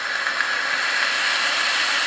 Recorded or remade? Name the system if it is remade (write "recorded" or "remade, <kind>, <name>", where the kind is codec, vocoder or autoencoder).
recorded